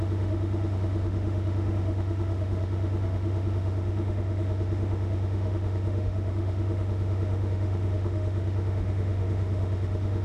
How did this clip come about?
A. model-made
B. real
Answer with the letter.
A